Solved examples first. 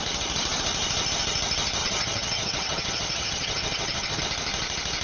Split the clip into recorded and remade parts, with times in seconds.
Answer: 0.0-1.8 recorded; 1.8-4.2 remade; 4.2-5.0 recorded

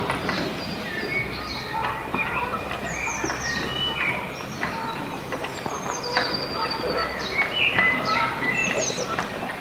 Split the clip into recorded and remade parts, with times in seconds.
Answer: 0.0-2.1 recorded; 2.1-3.1 remade; 3.1-7.0 recorded; 7.0-8.2 remade; 8.2-9.6 recorded

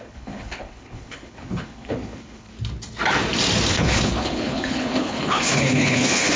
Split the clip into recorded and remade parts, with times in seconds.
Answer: 0.0-2.5 remade; 2.5-3.7 recorded; 3.7-6.4 remade

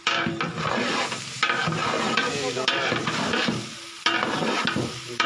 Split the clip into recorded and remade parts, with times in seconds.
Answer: 0.0-5.3 recorded